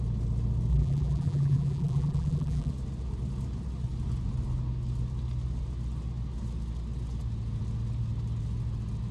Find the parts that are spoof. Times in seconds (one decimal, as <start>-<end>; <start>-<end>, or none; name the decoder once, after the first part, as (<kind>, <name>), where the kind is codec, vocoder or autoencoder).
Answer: 0.7-2.7 (vocoder, BigVGAN v2)